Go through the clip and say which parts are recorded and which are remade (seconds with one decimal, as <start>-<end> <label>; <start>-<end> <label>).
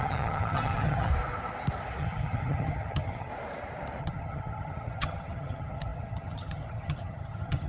0.0-1.1 remade; 1.1-2.0 recorded; 2.0-3.3 remade; 3.3-4.0 recorded; 4.0-7.7 remade